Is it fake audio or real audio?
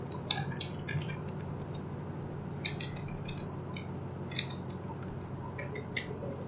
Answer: real